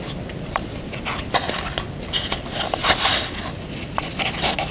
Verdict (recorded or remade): recorded